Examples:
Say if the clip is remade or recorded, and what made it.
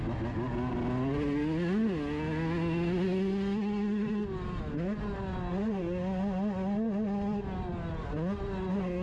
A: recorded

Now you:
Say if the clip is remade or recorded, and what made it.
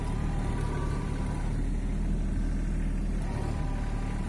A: recorded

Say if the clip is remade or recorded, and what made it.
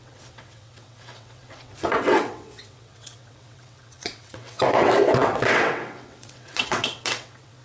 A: remade, vocoder, WaveNeXt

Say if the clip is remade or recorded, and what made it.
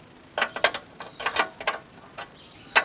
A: recorded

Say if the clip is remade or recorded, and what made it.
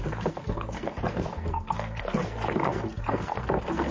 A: remade, codec, SNAC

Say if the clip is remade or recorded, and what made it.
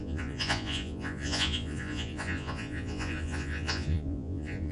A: remade, vocoder, Vocos